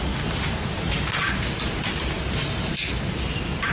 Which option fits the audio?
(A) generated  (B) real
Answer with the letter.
B